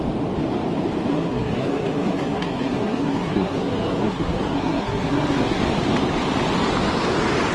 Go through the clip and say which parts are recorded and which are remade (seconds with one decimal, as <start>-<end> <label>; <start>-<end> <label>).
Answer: 0.0-1.1 recorded; 1.1-5.6 remade; 5.6-7.5 recorded